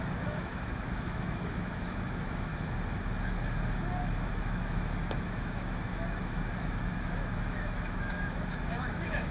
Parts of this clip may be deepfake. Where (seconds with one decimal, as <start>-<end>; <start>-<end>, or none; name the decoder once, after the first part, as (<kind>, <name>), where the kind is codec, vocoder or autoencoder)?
0.0-2.5 (autoencoder, DAC-VAE); 4.3-9.3